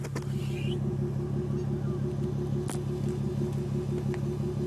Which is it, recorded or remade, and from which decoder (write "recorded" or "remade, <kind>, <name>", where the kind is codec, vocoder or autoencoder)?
recorded